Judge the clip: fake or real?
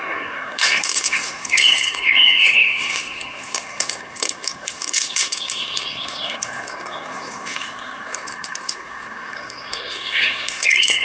fake